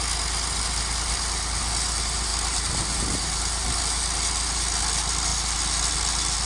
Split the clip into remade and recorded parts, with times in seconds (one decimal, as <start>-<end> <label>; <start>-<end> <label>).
0.0-6.5 recorded